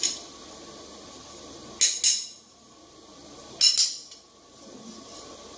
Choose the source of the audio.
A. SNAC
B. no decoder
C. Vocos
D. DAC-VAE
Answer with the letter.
B